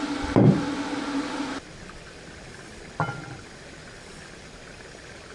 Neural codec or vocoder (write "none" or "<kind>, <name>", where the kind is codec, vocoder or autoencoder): none